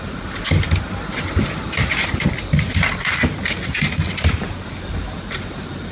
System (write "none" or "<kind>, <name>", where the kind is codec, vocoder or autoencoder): none